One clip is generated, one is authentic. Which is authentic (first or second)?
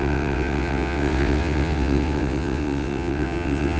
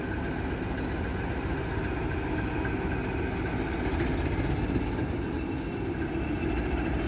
second